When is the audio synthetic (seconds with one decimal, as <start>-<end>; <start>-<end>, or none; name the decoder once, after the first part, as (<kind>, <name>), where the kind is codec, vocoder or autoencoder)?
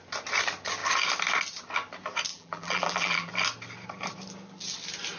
2.3-3.3 (vocoder, BigVGAN v2)